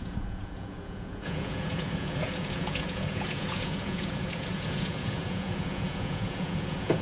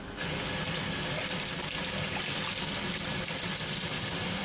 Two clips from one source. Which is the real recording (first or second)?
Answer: second